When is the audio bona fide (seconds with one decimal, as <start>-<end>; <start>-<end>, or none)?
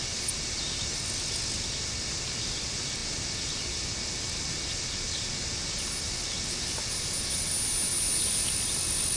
0.0-9.2